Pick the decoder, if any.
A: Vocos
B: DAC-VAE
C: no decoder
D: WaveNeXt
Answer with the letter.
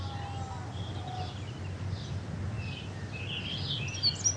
C